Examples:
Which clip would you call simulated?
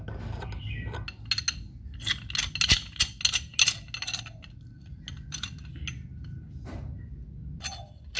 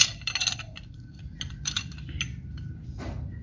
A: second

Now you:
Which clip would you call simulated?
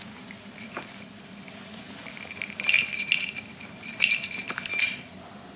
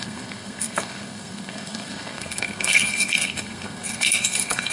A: second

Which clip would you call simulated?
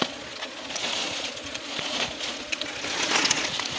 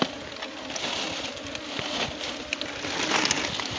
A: first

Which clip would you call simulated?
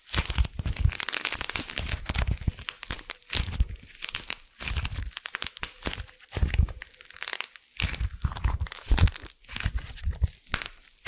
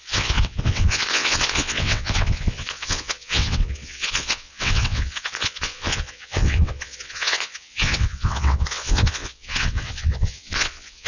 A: second